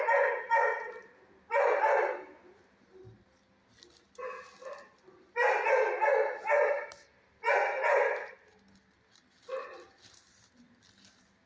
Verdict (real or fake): real